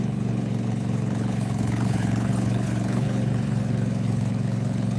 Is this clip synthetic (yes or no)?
yes